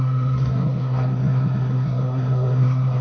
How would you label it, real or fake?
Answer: fake